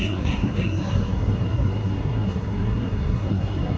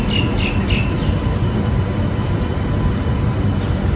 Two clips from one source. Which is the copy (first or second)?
first